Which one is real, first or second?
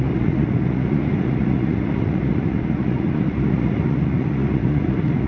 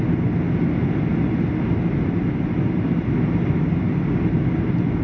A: second